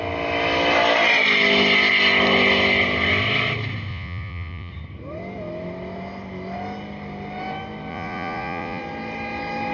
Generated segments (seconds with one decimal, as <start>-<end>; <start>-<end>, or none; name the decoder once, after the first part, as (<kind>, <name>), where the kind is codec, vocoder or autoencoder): 3.9-4.7 (vocoder, Vocos); 7.9-8.8